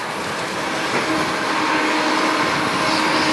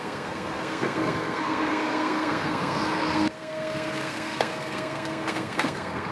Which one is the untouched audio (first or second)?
first